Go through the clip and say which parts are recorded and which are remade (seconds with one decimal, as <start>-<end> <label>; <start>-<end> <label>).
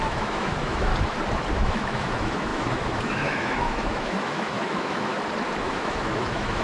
0.0-0.9 remade; 0.9-1.5 recorded; 1.5-5.1 remade; 5.1-5.6 recorded; 5.6-6.6 remade